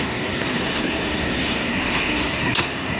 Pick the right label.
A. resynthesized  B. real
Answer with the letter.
A